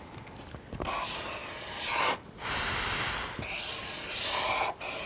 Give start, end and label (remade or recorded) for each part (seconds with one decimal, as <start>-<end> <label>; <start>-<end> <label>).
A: 0.0-5.1 recorded